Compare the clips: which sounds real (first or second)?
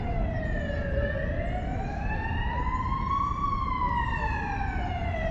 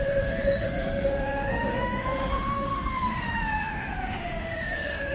first